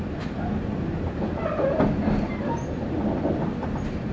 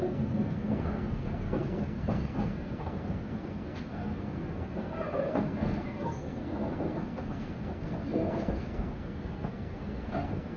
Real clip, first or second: first